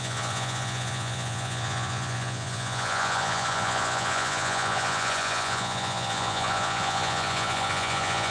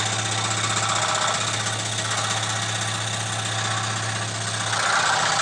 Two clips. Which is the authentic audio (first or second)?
second